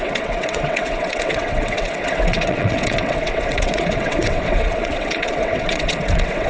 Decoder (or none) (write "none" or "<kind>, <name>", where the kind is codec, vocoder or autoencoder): vocoder, WaveNeXt